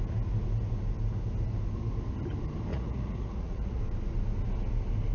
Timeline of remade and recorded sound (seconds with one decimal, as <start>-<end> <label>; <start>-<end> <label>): 0.0-2.7 recorded; 2.7-3.8 remade; 3.8-5.1 recorded

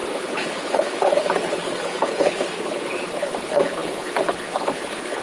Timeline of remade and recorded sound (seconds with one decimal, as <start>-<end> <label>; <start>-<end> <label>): 0.0-5.2 remade